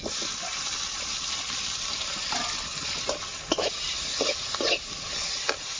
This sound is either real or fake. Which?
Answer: fake